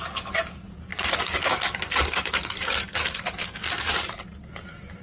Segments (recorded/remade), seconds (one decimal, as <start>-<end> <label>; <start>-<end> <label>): 0.0-0.9 recorded; 0.9-3.9 remade; 3.9-5.0 recorded